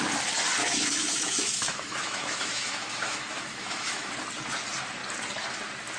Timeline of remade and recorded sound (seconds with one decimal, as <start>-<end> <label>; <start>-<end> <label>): 0.0-0.6 recorded; 0.6-4.1 remade; 4.1-6.0 recorded